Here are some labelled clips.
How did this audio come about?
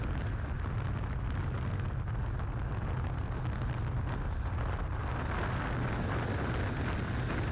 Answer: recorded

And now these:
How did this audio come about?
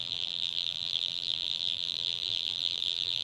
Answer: remade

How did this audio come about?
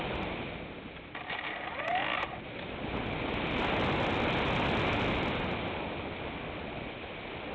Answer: recorded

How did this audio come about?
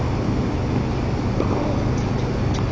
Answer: recorded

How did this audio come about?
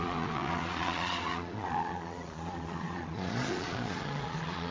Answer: remade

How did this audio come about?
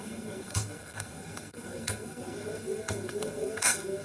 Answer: remade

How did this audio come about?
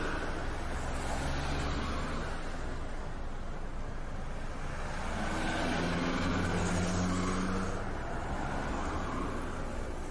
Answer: recorded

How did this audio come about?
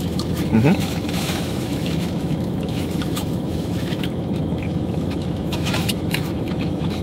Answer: remade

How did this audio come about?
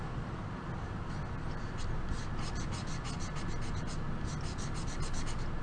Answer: recorded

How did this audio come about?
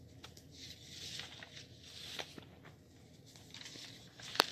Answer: recorded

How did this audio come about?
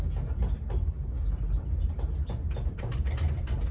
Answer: recorded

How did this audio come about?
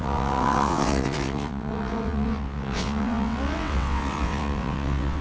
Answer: remade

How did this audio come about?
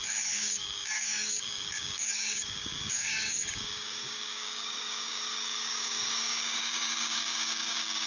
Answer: remade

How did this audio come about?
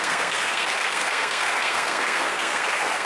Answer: remade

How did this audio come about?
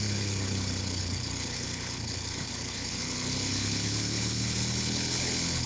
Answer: remade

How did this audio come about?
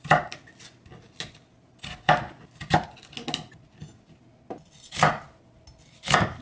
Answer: recorded